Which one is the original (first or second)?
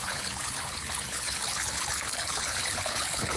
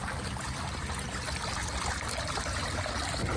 second